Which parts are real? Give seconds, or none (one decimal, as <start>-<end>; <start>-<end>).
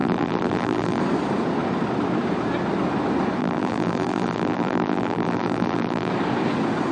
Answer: 1.0-3.4; 6.1-6.9